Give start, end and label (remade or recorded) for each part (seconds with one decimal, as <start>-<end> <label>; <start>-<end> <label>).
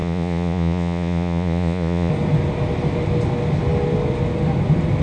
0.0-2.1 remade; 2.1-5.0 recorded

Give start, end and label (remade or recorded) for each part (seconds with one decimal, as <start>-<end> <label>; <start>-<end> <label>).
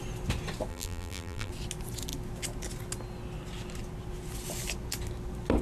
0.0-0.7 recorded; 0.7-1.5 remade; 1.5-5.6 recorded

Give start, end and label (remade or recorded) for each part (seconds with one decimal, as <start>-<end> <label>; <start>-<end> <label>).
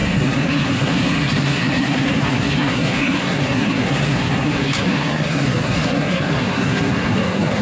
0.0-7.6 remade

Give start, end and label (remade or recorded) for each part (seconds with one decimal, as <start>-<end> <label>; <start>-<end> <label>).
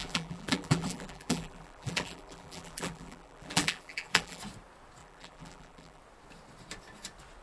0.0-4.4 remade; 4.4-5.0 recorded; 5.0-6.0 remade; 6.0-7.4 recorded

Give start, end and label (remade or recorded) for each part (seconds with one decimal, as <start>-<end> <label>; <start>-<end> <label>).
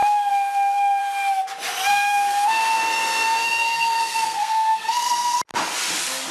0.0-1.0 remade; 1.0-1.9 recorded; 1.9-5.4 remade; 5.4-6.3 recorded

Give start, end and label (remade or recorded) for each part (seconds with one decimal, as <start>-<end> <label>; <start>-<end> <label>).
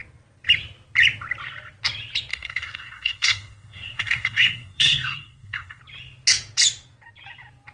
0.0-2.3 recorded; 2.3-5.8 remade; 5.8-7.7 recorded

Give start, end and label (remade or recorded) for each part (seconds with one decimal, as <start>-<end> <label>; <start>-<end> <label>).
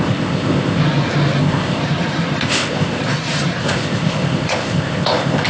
0.0-0.8 remade; 0.8-1.4 recorded; 1.4-1.8 remade; 1.8-2.4 recorded; 2.4-3.0 remade; 3.0-3.6 recorded; 3.6-5.5 remade